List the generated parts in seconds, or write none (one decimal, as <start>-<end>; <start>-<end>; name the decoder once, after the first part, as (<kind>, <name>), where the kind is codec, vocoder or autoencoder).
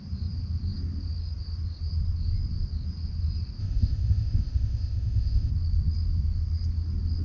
3.6-5.5 (codec, ZipCodec)